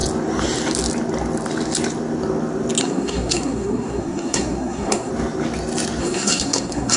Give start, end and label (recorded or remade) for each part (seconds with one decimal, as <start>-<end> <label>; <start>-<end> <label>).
0.0-2.8 recorded; 2.8-5.1 remade; 5.1-6.0 recorded; 6.0-7.0 remade